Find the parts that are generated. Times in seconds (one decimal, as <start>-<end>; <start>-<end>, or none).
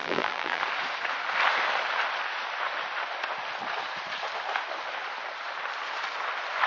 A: 0.0-0.6